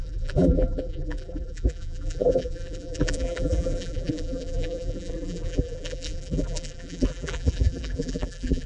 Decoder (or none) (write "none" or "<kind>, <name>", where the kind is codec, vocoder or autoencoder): vocoder, BigVGAN v2